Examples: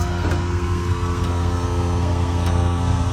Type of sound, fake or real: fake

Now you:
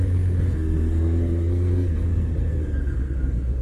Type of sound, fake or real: fake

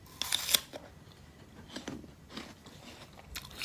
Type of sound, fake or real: real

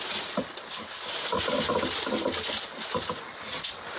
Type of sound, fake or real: real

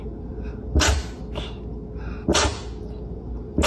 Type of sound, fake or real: real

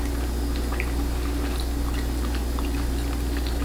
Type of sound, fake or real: real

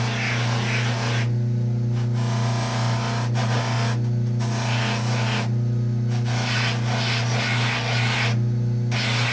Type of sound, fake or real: real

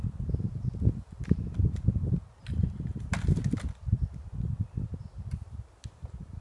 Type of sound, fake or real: real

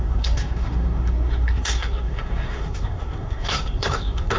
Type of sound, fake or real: fake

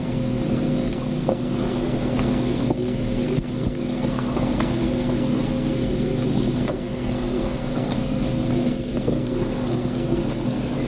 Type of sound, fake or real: fake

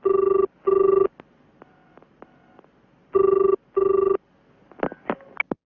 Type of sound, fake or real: real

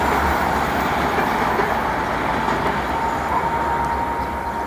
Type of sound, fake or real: real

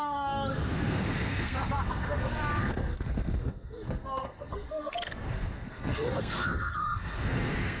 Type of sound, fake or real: fake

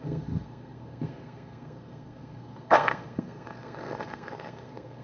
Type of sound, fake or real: fake